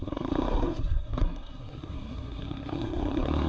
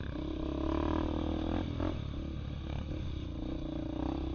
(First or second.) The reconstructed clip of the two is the first